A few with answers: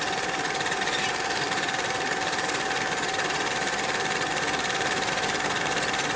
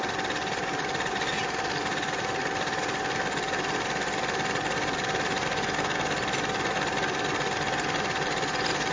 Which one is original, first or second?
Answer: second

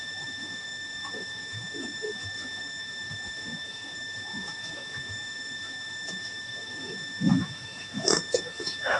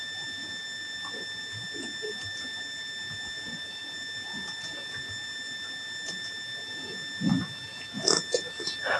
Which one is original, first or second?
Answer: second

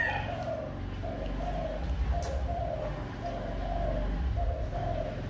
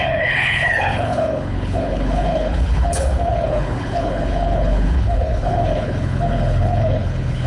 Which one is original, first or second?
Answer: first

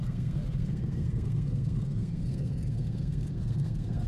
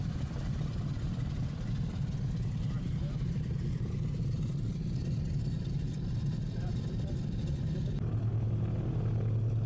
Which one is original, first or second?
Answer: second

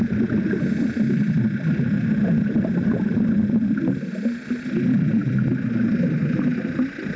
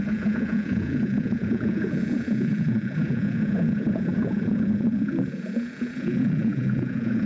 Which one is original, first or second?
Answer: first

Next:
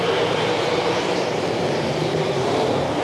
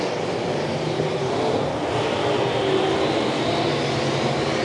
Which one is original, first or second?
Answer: second